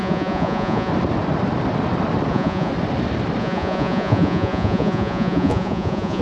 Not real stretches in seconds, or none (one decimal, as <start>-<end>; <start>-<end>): 0.0-0.9; 2.3-2.7; 3.4-6.2